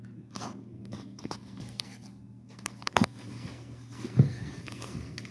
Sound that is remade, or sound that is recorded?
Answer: remade